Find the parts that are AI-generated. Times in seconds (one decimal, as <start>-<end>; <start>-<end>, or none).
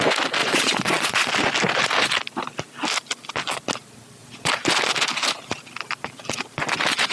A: 0.4-1.3